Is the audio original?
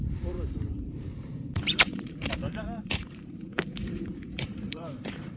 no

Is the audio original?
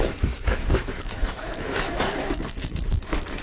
no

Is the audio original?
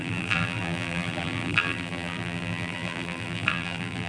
no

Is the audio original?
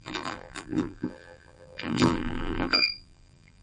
no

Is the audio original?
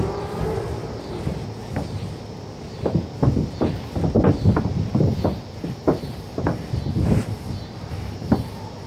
yes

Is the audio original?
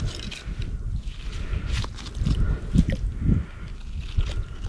yes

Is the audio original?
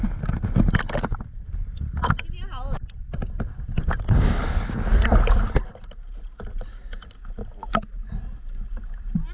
yes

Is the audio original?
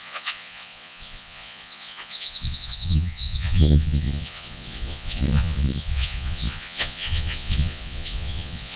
no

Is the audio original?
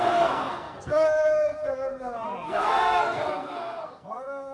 no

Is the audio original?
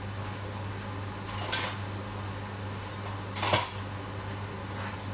yes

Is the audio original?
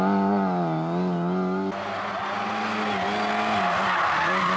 yes